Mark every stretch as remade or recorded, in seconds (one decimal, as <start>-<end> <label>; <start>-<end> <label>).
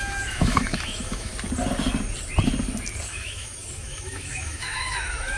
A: 0.0-1.3 remade; 1.3-3.1 recorded; 3.1-5.4 remade